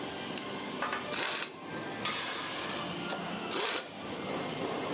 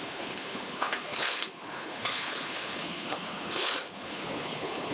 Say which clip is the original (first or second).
first